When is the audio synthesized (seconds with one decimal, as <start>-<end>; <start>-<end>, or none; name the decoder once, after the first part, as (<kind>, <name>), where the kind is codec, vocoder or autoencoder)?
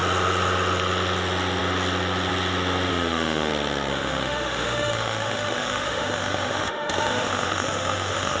2.9-3.5 (autoencoder, DAC-VAE); 3.9-8.4